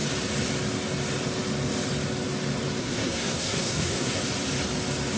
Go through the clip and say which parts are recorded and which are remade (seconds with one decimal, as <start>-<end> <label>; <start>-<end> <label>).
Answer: 0.0-2.8 recorded; 2.8-4.2 remade; 4.2-5.2 recorded

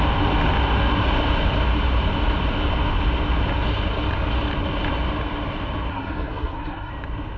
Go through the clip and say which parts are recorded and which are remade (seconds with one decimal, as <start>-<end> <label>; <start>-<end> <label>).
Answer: 0.0-5.9 recorded; 5.9-6.9 remade; 6.9-7.4 recorded

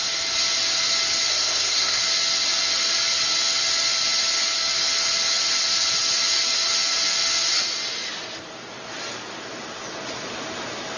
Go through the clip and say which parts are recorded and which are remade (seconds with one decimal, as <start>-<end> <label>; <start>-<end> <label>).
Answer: 0.0-1.3 recorded; 1.3-2.0 remade; 2.0-11.0 recorded

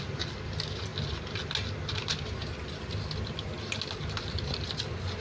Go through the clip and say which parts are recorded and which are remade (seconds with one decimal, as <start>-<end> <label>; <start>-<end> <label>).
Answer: 0.0-5.2 recorded

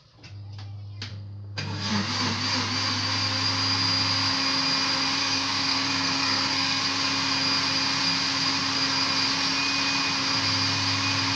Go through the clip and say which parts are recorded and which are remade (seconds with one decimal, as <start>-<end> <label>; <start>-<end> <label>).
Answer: 0.0-1.1 recorded; 1.1-1.9 remade; 1.9-5.2 recorded; 5.2-6.8 remade; 6.8-11.4 recorded

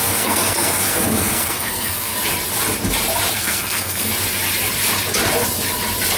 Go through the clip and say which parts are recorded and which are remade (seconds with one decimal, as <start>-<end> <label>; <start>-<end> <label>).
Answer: 0.0-2.1 remade; 2.1-3.3 recorded; 3.3-4.1 remade; 4.1-6.2 recorded